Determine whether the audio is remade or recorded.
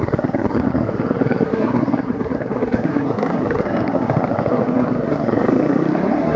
remade